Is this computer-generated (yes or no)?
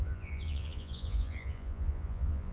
yes